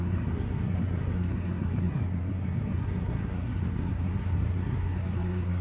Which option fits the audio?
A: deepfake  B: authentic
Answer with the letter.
A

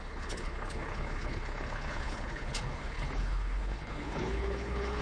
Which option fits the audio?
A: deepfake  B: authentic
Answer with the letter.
A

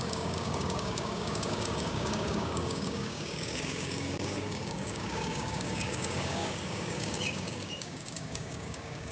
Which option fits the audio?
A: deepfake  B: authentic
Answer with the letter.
A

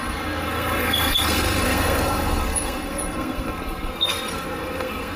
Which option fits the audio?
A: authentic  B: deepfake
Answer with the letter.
B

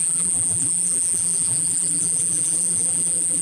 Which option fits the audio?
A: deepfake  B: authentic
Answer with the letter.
A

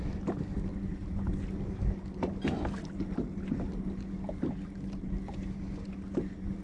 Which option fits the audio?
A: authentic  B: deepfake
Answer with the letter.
A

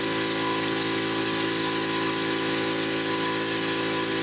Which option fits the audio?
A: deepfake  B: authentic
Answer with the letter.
B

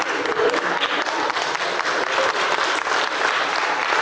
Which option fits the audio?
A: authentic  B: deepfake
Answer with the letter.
A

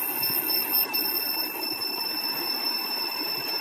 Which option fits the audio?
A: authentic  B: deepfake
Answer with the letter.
B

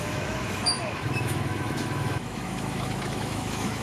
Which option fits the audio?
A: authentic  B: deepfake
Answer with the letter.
B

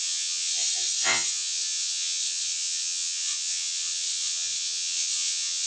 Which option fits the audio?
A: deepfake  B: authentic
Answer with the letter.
A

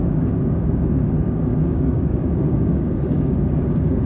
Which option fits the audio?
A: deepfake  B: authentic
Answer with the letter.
A